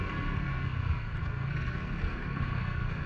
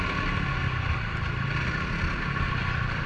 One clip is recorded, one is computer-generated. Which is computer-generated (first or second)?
first